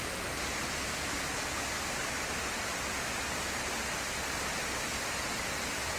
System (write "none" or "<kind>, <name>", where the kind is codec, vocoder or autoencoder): none